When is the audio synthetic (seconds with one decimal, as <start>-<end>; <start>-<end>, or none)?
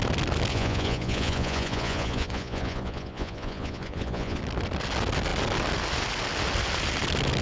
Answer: 0.5-4.4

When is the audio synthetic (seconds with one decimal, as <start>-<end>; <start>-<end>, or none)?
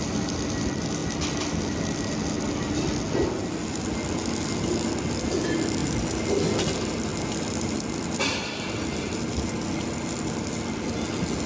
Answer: none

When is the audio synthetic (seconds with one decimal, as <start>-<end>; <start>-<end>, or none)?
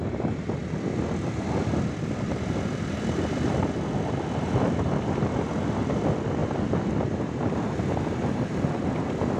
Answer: 0.6-3.5; 6.4-6.9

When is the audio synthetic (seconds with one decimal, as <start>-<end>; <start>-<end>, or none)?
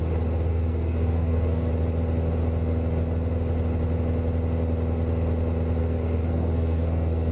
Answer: 0.5-1.7; 5.8-7.3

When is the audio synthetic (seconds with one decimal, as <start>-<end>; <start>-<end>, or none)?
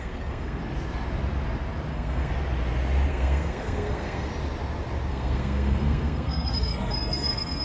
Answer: 0.0-0.6; 1.9-2.3; 3.1-4.3; 5.1-7.6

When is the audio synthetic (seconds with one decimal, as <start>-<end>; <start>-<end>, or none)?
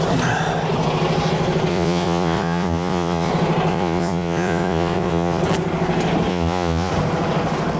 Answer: 1.7-3.3; 3.7-5.4; 6.3-6.9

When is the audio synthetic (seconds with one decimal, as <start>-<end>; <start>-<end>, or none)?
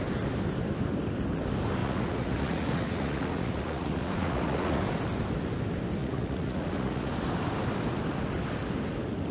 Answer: 1.8-4.8; 6.0-7.1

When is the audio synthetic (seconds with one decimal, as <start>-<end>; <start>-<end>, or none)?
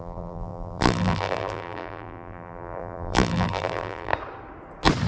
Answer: 0.0-4.1